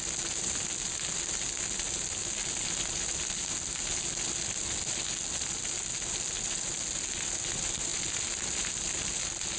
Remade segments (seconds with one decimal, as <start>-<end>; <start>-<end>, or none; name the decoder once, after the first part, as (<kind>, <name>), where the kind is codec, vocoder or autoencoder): none